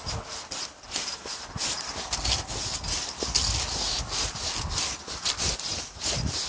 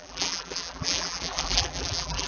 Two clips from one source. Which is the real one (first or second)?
first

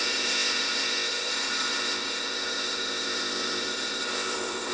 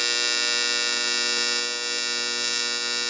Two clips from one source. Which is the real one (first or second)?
second